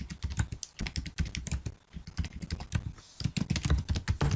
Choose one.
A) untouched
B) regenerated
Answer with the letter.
A